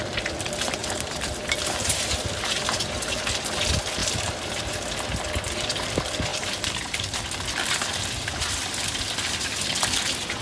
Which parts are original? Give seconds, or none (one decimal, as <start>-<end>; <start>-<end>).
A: 0.0-0.8; 2.6-4.0; 4.6-6.3; 7.2-10.4